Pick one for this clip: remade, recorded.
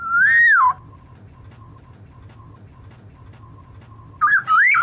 recorded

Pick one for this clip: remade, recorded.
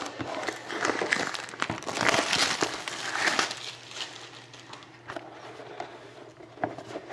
recorded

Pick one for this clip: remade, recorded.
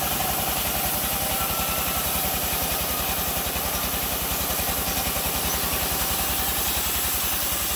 recorded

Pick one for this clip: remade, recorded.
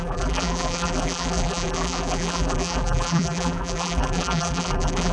remade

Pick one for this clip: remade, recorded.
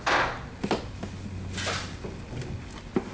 recorded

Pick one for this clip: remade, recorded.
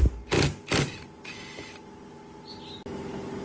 recorded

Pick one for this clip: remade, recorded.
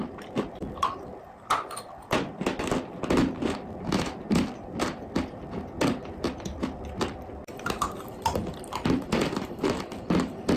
recorded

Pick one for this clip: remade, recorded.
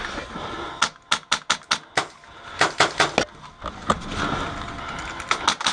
recorded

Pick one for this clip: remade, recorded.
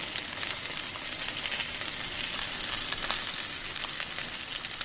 recorded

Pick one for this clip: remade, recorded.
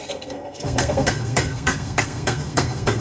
remade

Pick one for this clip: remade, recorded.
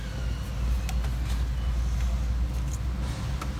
recorded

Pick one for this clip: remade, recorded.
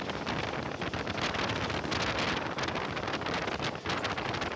recorded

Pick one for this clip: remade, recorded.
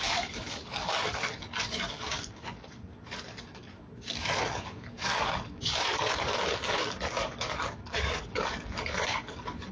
remade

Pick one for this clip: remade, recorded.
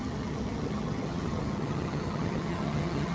remade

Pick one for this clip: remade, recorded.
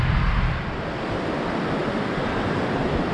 recorded